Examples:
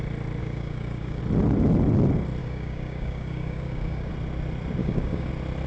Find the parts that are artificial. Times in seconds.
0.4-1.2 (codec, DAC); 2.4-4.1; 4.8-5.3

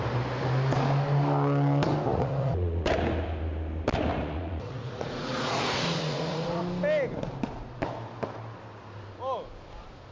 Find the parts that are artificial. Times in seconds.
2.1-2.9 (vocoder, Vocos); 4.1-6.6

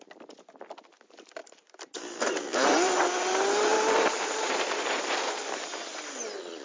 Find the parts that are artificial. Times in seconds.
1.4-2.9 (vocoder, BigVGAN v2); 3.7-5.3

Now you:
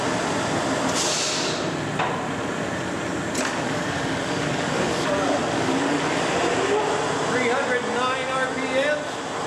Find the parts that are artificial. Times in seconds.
3.5-6.3 (codec, DAC)

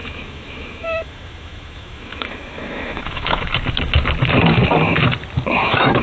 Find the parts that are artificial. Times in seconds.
0.0-3.5 (autoencoder, DAC-VAE); 5.6-6.0

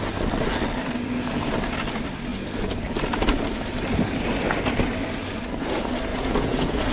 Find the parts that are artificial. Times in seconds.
6.1-6.9 (vocoder, Vocos)

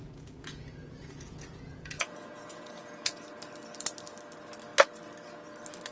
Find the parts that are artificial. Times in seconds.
0.0-3.2 (vocoder, Vocos)

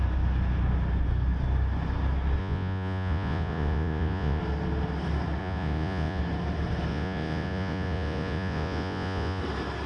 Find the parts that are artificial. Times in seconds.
2.4-4.4 (vocoder, Vocos); 5.4-6.2; 6.9-9.4